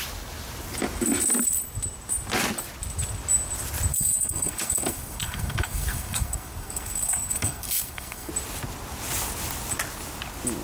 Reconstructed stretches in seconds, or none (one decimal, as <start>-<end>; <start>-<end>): 3.9-8.3